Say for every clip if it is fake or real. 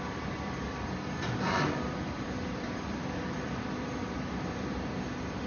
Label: fake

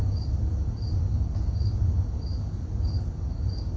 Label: real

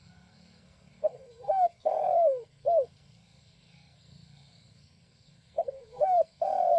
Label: fake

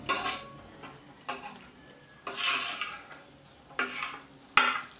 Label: real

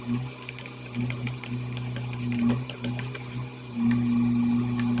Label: real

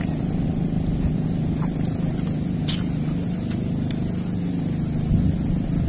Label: real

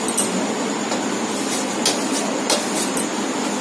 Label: real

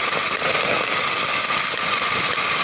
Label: real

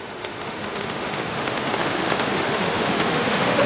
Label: fake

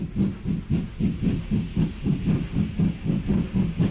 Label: real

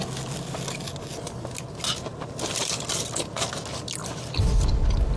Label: real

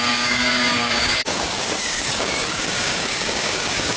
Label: fake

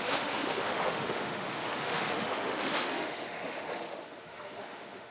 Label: fake